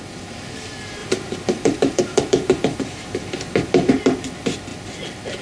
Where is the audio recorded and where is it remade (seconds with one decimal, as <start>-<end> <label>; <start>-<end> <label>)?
0.0-1.0 recorded; 1.0-3.9 remade; 3.9-5.4 recorded